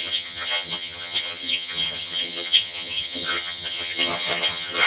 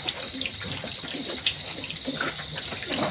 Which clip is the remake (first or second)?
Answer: first